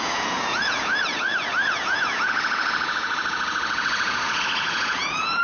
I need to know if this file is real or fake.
fake